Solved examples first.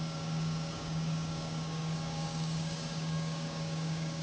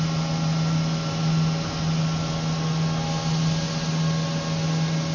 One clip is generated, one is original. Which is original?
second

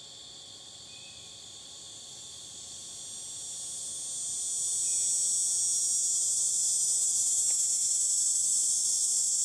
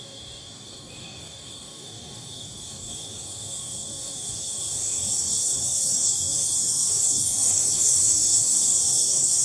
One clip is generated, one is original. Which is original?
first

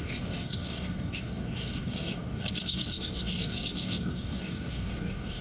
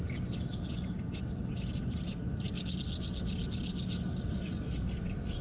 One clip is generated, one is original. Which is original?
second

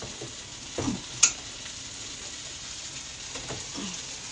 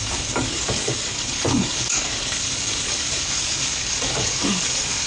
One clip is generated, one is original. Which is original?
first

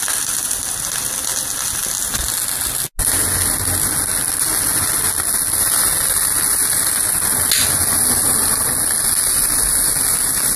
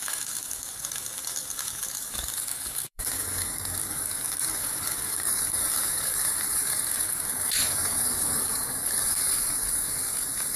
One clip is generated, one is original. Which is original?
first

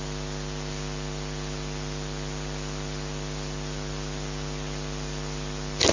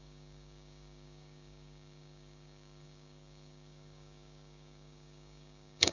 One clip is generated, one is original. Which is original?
first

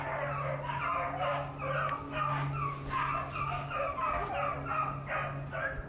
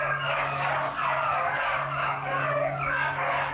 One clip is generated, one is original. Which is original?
first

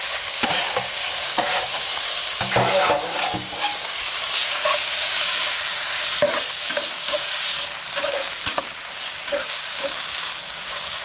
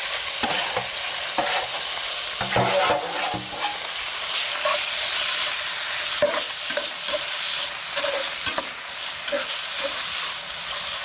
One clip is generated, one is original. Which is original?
second